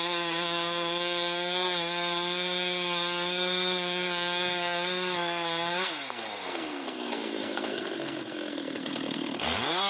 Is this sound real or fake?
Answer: fake